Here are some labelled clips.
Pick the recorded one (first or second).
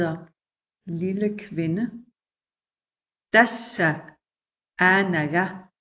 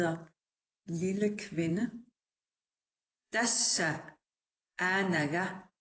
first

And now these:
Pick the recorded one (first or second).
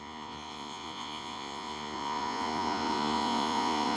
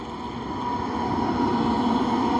second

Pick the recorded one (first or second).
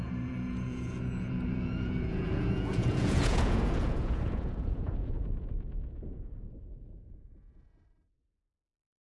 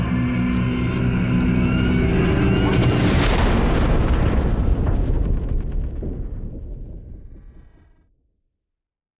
second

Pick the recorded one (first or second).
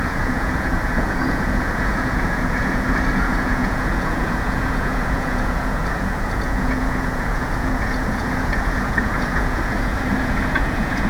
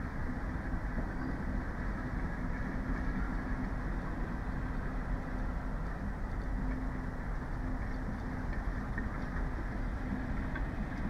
second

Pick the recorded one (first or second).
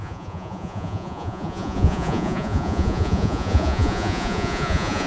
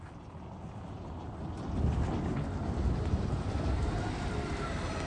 second